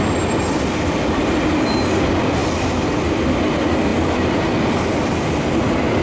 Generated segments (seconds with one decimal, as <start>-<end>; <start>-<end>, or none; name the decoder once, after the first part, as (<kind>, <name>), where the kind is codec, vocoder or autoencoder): none